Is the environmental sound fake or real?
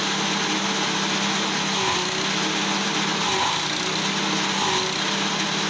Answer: real